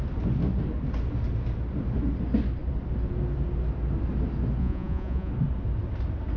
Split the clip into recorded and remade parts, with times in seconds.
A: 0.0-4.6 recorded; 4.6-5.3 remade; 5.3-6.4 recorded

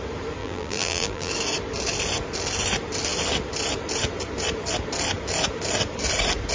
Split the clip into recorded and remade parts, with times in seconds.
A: 0.0-0.4 recorded; 0.4-1.3 remade; 1.3-6.5 recorded

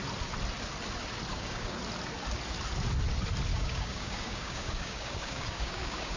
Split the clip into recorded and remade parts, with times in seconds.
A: 0.0-1.3 recorded; 1.3-1.8 remade; 1.8-3.5 recorded; 3.5-6.2 remade

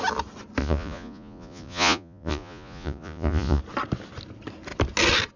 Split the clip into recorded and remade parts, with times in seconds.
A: 0.0-0.6 recorded; 0.6-3.6 remade; 3.6-5.4 recorded

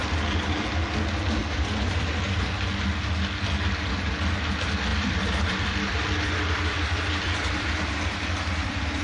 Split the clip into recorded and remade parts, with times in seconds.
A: 0.0-1.4 recorded; 1.4-2.2 remade; 2.2-4.9 recorded; 4.9-9.0 remade

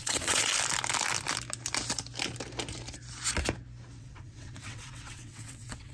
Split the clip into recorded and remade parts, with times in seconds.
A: 0.0-0.5 remade; 0.5-4.0 recorded; 4.0-5.9 remade

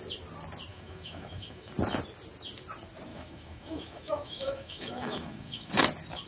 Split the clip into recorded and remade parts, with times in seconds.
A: 0.0-0.7 recorded; 0.7-1.7 remade; 1.7-3.1 recorded; 3.1-5.7 remade; 5.7-6.3 recorded